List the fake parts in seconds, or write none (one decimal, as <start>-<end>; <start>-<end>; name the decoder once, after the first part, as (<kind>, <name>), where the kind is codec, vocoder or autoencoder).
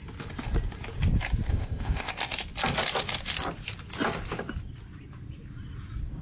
1.5-2.1 (codec, ZipCodec)